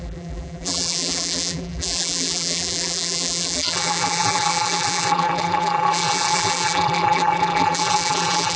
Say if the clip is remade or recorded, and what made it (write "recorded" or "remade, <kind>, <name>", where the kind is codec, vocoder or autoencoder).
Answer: remade, vocoder, BigVGAN v2